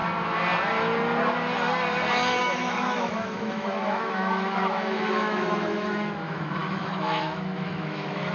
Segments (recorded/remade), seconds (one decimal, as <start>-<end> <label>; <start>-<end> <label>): 0.0-2.4 recorded; 2.4-8.3 remade